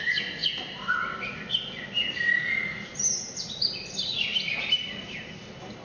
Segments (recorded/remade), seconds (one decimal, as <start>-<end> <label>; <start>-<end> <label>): 0.0-5.8 recorded